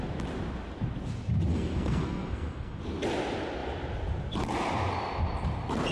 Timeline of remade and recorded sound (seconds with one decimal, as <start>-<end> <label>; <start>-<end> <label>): 0.0-1.5 recorded; 1.5-2.8 remade; 2.8-5.9 recorded

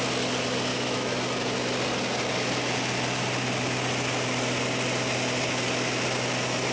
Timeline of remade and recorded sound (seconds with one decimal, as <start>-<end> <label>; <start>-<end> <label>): 0.0-0.7 recorded; 0.7-1.2 remade; 1.2-6.7 recorded

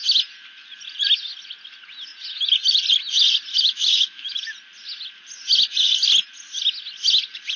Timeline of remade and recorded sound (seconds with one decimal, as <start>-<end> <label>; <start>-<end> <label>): 0.0-3.5 recorded; 3.5-4.4 remade; 4.4-7.6 recorded

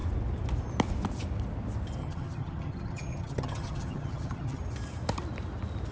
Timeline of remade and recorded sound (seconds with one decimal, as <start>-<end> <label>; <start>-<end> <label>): 0.0-2.0 recorded; 2.0-4.6 remade; 4.6-5.9 recorded

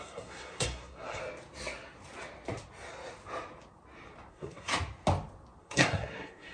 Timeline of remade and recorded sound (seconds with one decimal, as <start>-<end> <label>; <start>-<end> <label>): 0.0-1.2 remade; 1.2-4.3 recorded; 4.3-4.7 remade; 4.7-5.6 recorded; 5.6-6.5 remade

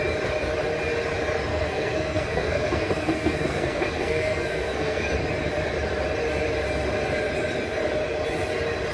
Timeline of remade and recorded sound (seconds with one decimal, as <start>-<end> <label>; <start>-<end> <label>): 0.0-1.5 recorded; 1.5-5.1 remade; 5.1-8.9 recorded

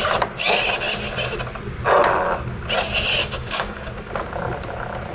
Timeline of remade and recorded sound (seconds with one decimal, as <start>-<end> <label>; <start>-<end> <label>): 0.0-3.2 recorded; 3.2-4.1 remade; 4.1-5.1 recorded

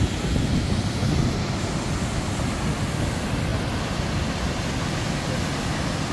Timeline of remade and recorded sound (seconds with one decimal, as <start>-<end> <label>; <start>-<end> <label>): 0.0-6.1 recorded